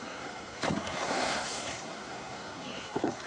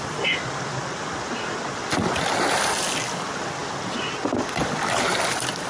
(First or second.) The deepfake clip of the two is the first